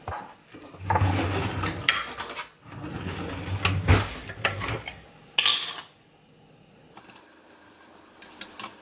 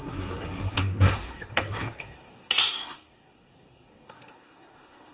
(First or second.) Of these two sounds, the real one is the first